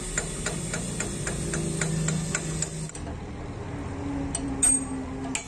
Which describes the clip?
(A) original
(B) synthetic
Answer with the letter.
A